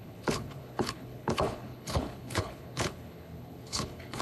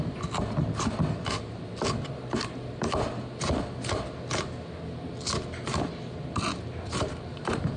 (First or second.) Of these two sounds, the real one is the second